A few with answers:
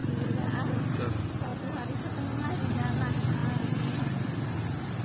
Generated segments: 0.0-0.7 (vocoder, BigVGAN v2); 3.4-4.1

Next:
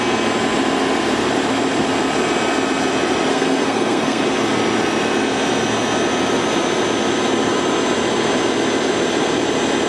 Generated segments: 3.3-4.2 (codec, SNAC)

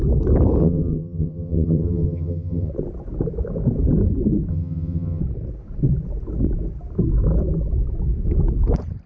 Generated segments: 0.6-2.7 (vocoder, HiFi-GAN); 4.5-5.2